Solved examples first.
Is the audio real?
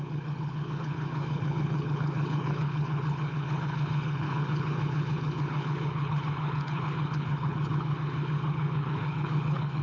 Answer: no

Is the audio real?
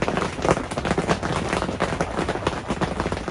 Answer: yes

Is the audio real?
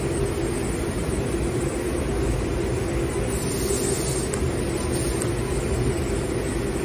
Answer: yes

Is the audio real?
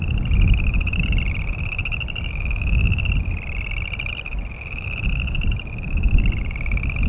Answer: yes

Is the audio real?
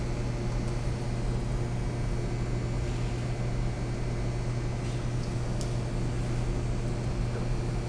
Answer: yes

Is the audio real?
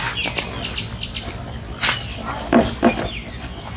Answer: yes